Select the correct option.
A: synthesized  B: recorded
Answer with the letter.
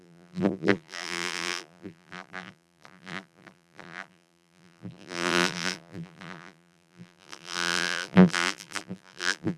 A